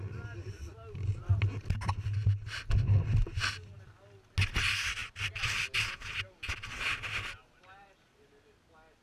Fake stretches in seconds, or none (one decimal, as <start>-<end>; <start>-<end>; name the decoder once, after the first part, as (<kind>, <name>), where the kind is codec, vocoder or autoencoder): 5.0-5.9 (vocoder, BigVGAN v2)